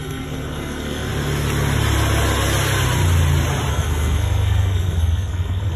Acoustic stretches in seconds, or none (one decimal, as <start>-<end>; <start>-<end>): 1.1-3.7